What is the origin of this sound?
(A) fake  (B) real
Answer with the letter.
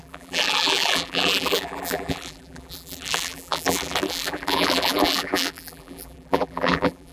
A